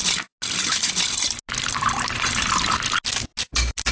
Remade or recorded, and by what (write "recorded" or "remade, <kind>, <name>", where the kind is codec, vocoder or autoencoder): recorded